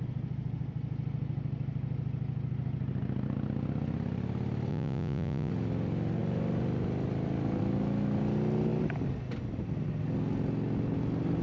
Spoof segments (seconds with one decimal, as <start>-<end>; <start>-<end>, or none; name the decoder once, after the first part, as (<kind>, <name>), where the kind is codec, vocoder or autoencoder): 4.7-5.5 (vocoder, Vocos)